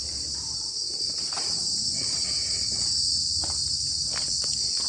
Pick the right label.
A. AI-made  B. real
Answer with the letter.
B